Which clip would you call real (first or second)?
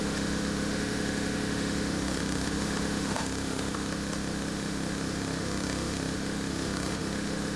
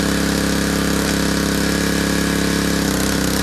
second